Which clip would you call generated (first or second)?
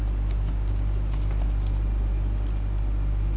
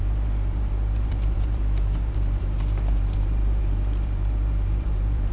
second